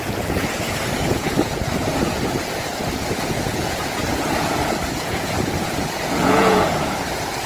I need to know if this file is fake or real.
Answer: fake